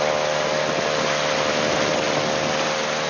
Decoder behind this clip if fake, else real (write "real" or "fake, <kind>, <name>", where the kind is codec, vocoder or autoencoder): real